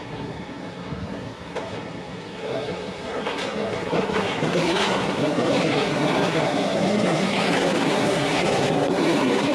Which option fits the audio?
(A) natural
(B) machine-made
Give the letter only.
B